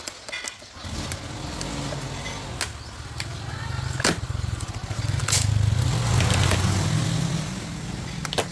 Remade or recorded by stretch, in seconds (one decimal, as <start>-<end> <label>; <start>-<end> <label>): 0.0-8.5 recorded